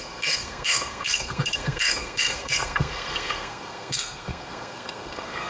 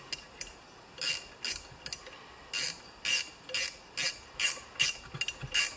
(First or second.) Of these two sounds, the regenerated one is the first